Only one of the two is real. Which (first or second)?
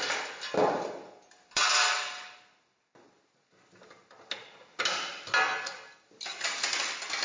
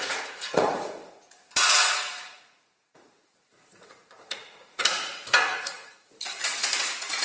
first